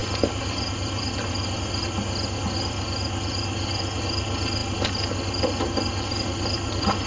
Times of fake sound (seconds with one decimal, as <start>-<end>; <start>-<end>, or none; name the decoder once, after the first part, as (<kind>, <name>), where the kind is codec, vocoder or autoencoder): none